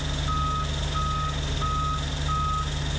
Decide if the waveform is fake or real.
real